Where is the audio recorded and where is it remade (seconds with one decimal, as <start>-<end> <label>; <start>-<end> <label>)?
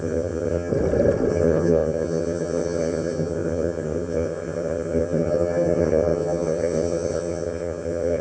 0.0-0.7 remade; 0.7-1.3 recorded; 1.3-8.2 remade